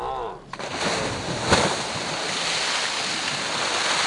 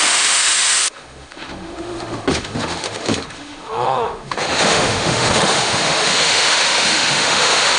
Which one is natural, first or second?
first